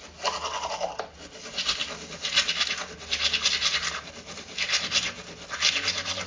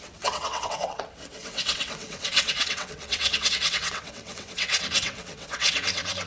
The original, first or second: first